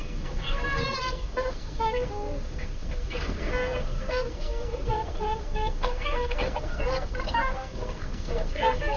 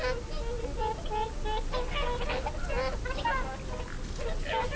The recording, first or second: second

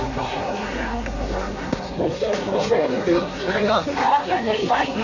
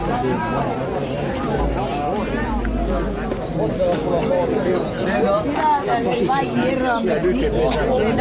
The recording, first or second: second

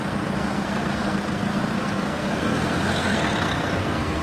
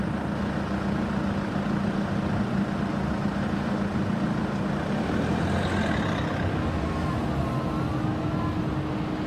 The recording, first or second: second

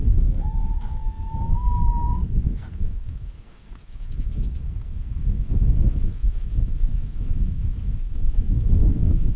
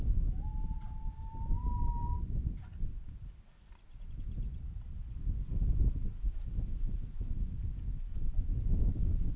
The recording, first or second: second